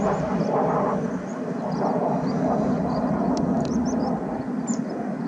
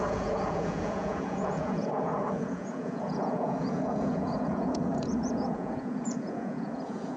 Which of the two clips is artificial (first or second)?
second